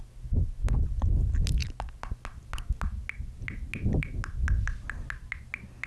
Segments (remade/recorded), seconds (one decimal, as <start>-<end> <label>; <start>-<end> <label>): 0.0-1.6 recorded; 1.6-2.1 remade; 2.1-5.9 recorded